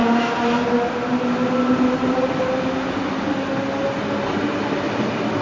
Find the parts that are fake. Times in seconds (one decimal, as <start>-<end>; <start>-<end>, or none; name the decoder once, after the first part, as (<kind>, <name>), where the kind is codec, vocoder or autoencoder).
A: none